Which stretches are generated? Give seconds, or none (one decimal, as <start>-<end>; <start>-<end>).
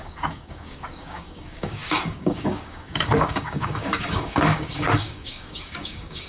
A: 0.0-6.3